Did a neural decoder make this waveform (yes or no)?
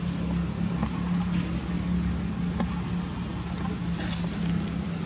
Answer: no